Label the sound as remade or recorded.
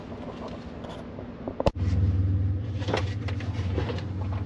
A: recorded